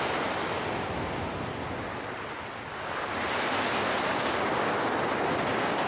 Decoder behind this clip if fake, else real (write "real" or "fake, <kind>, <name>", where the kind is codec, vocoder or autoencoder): real